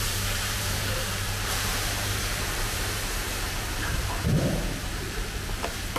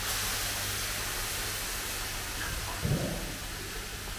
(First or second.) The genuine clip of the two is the second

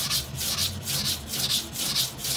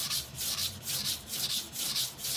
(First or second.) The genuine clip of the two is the first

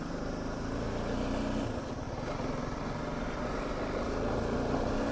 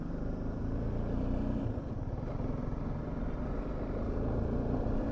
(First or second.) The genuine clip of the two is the first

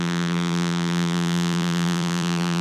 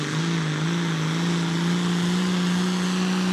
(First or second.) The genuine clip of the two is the second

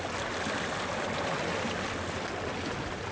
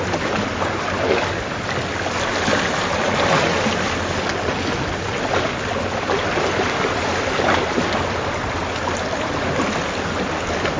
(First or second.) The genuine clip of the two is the second